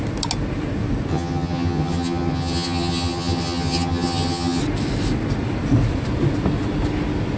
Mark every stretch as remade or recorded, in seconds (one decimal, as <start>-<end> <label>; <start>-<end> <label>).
0.0-1.1 recorded; 1.1-4.6 remade; 4.6-7.4 recorded